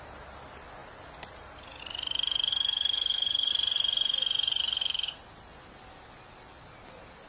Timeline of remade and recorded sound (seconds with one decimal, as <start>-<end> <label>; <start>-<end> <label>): 0.0-2.5 recorded; 2.5-3.5 remade; 3.5-4.6 recorded; 4.6-5.2 remade; 5.2-7.3 recorded